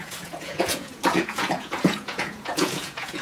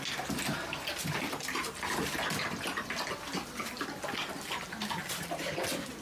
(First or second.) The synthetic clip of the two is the first